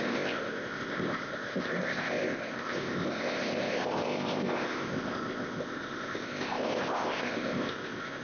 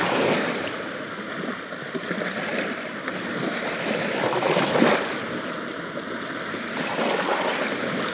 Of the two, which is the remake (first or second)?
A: first